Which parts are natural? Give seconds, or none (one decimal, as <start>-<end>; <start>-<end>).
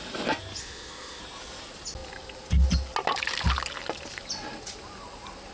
0.0-0.6; 1.2-5.5